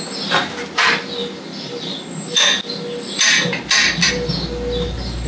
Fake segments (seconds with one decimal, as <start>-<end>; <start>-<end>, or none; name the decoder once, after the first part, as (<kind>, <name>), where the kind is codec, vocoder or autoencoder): none